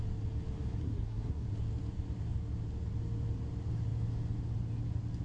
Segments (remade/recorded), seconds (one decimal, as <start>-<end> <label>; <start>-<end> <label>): 0.0-0.8 recorded; 0.8-1.5 remade; 1.5-5.2 recorded